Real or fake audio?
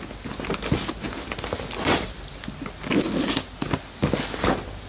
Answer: real